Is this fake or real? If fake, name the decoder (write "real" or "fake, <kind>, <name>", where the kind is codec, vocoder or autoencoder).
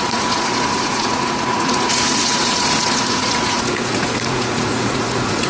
fake, vocoder, Vocos